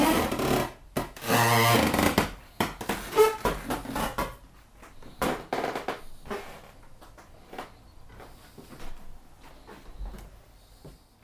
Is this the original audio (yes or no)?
yes